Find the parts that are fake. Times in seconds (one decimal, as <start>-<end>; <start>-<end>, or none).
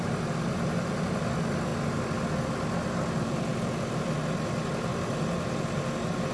none